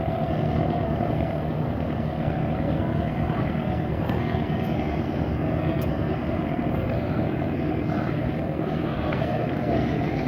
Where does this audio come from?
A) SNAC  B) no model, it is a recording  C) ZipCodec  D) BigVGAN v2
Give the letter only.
A